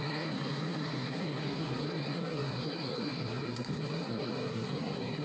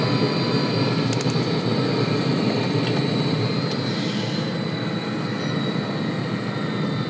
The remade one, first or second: first